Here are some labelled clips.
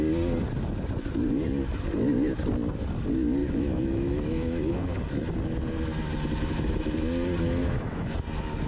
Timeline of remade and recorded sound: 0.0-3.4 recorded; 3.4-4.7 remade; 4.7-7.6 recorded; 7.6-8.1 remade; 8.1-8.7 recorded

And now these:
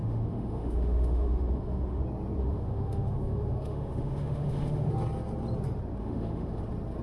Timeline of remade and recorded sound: 0.0-2.0 remade; 2.0-2.4 recorded; 2.4-4.9 remade; 4.9-6.0 recorded; 6.0-6.6 remade; 6.6-7.0 recorded

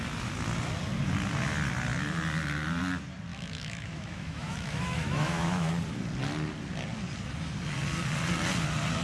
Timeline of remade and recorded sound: 0.0-3.3 recorded; 3.3-5.7 remade; 5.7-9.0 recorded

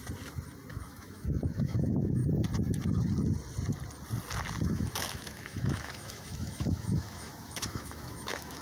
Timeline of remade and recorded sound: 0.0-0.7 recorded; 0.7-2.2 remade; 2.2-4.6 recorded; 4.6-8.6 remade